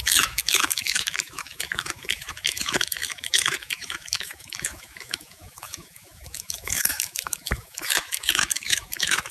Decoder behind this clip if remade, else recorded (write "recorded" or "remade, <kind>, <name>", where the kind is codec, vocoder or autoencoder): remade, autoencoder, DAC-VAE